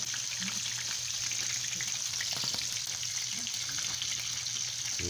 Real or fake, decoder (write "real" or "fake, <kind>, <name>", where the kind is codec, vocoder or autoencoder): real